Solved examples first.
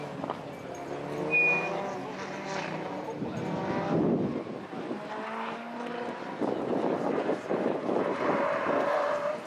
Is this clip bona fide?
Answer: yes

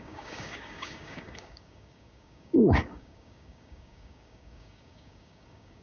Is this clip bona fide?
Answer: no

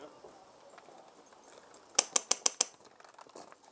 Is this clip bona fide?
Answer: yes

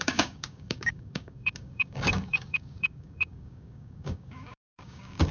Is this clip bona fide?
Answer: no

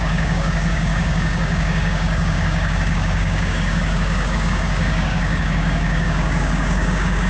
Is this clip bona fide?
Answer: no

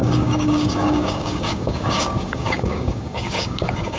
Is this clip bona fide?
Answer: no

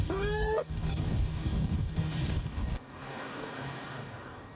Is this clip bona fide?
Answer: no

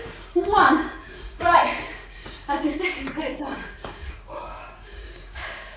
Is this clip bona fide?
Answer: no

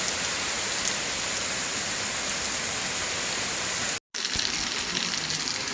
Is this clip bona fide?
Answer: yes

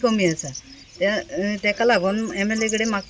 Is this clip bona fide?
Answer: yes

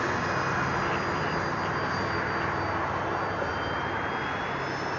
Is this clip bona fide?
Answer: yes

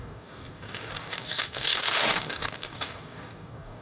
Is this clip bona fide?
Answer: no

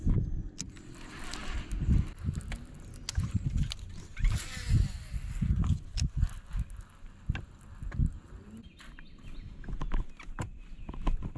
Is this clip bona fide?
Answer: yes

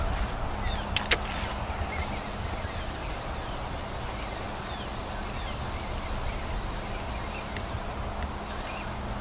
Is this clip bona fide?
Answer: yes